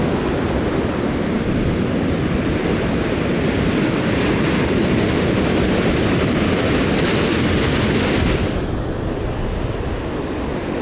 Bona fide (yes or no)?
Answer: yes